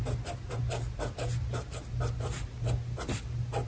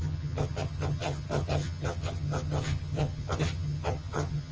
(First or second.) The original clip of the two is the first